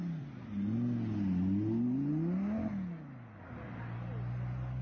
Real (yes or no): yes